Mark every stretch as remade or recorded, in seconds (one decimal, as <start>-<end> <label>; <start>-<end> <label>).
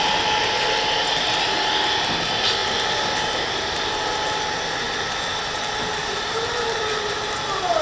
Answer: 0.0-6.0 recorded; 6.0-7.8 remade